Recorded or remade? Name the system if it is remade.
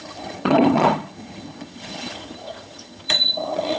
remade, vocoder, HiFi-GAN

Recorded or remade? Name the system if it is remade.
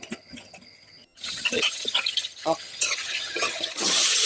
remade, vocoder, HiFi-GAN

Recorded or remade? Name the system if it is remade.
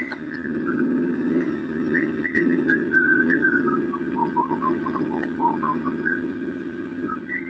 remade, vocoder, HiFi-GAN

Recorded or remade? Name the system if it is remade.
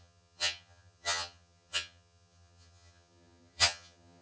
remade, vocoder, HiFi-GAN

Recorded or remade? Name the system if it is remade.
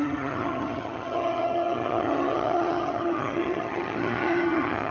remade, vocoder, HiFi-GAN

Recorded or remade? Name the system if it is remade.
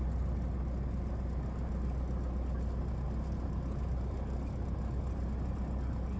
recorded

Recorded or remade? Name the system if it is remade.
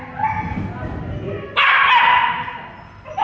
recorded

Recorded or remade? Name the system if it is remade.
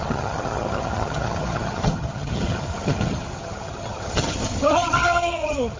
remade, vocoder, HiFi-GAN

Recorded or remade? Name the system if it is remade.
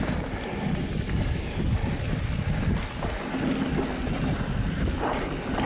recorded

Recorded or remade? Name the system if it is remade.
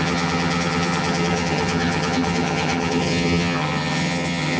remade, vocoder, HiFi-GAN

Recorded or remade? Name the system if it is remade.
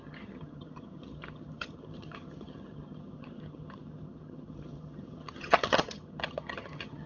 remade, vocoder, HiFi-GAN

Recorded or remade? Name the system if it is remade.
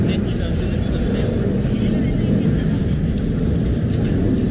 recorded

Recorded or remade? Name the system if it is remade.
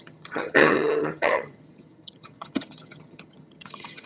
remade, vocoder, HiFi-GAN